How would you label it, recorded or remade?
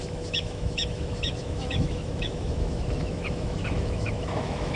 remade